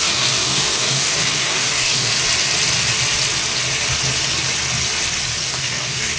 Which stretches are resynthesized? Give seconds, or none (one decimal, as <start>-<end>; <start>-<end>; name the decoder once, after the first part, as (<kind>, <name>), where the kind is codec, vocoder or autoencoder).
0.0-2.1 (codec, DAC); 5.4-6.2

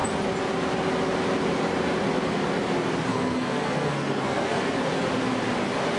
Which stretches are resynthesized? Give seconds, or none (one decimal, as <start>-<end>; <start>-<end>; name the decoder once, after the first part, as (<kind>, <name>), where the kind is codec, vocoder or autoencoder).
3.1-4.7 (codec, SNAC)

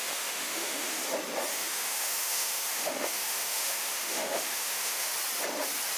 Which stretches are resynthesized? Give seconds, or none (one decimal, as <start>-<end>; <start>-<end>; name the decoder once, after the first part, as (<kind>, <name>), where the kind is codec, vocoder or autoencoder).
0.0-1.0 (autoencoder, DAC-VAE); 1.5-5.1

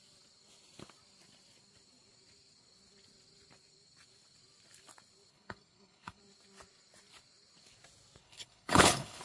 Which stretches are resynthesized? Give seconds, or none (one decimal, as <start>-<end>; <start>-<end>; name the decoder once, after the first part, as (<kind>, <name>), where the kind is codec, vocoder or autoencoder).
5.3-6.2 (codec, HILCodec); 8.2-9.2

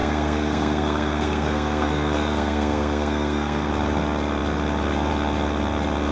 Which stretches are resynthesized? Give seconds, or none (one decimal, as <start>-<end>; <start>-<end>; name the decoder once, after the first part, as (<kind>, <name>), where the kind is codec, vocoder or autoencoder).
0.0-3.7 (codec, SNAC)

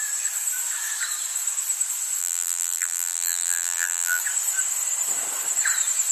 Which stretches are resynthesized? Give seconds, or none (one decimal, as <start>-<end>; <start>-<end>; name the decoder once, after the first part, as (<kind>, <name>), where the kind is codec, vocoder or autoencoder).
2.2-4.2 (vocoder, BigVGAN v2)